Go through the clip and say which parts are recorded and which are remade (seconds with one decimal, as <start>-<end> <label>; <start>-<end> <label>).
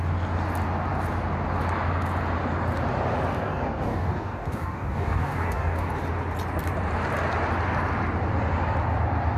0.0-3.4 recorded; 3.4-5.9 remade; 5.9-9.4 recorded